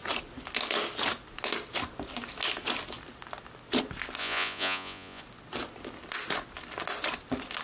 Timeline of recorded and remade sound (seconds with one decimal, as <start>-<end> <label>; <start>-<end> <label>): 0.0-4.2 recorded; 4.2-5.2 remade; 5.2-7.6 recorded